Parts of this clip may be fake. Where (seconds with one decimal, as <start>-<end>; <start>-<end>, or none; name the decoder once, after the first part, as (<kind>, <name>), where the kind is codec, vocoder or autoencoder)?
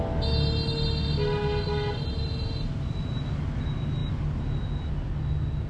4.0-4.9 (vocoder, BigVGAN v2)